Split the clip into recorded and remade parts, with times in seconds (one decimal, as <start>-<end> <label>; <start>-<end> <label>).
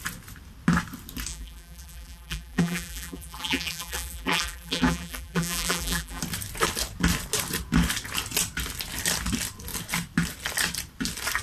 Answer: 0.0-1.3 recorded; 1.3-6.2 remade; 6.2-11.4 recorded